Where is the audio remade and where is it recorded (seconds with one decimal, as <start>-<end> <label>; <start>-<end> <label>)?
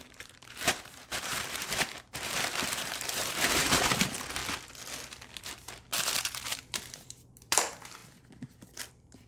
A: 0.0-4.4 remade; 4.4-5.4 recorded; 5.4-8.0 remade; 8.0-8.9 recorded; 8.9-9.3 remade